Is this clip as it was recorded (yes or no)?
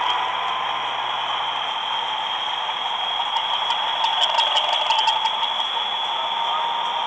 yes